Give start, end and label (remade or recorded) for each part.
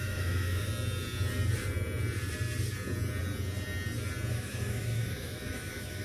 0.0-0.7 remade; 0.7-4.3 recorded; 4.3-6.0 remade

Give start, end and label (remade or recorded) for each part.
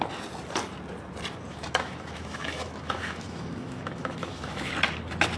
0.0-1.5 recorded; 1.5-4.7 remade; 4.7-5.4 recorded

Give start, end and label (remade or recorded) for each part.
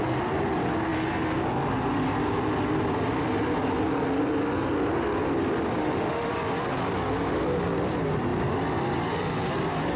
0.0-5.8 recorded; 5.8-6.3 remade; 6.3-10.0 recorded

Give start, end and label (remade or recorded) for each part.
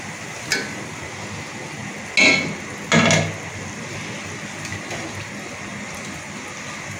0.0-7.0 recorded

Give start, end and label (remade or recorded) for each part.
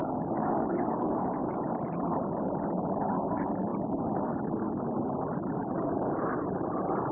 0.0-1.7 remade; 1.7-5.6 recorded; 5.6-6.3 remade; 6.3-7.1 recorded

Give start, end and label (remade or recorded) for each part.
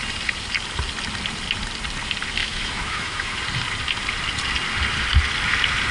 0.0-2.4 recorded; 2.4-3.4 remade; 3.4-5.9 recorded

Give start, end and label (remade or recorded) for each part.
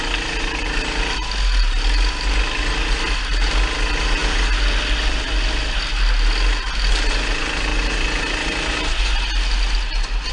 0.0-10.3 recorded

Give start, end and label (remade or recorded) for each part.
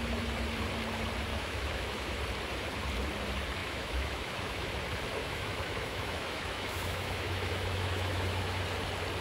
0.0-1.3 recorded; 1.3-2.2 remade; 2.2-3.6 recorded; 3.6-4.7 remade; 4.7-5.2 recorded; 5.2-8.6 remade; 8.6-9.2 recorded